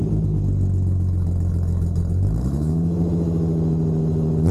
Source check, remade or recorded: recorded